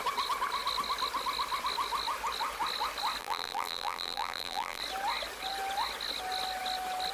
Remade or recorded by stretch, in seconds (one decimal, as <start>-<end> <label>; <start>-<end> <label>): 0.0-3.2 recorded; 3.2-4.8 remade; 4.8-7.1 recorded